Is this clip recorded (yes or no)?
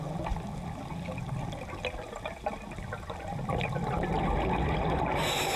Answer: yes